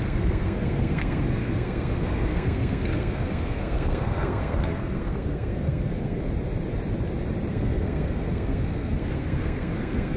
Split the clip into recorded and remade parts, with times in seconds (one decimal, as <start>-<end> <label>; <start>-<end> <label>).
0.0-6.2 remade; 6.2-7.5 recorded; 7.5-10.2 remade